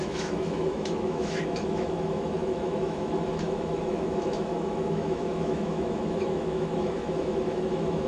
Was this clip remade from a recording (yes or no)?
yes